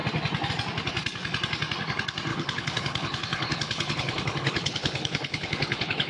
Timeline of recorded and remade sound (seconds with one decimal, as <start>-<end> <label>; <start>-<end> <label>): 0.0-2.3 recorded; 2.3-6.1 remade